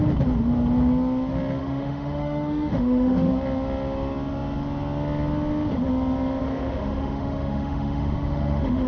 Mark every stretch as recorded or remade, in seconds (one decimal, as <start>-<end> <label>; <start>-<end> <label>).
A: 0.0-1.6 recorded; 1.6-3.3 remade; 3.3-6.4 recorded; 6.4-8.9 remade